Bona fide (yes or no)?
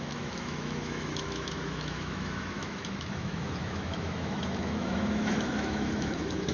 no